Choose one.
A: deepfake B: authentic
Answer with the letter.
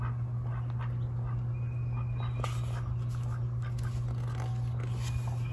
B